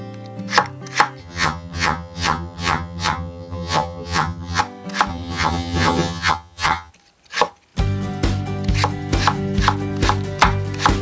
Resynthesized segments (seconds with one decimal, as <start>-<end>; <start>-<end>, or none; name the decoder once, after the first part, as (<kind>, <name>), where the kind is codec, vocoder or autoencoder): 1.2-4.6 (vocoder, HiFi-GAN); 5.1-6.9